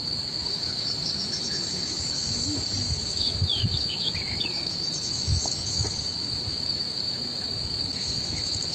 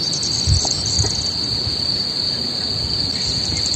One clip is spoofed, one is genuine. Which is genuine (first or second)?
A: second